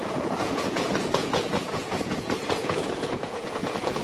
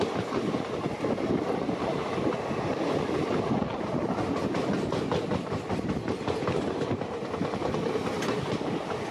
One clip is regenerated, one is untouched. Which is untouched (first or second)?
second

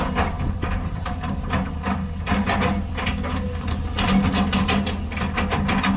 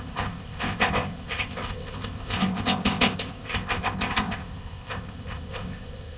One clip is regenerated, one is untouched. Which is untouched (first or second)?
first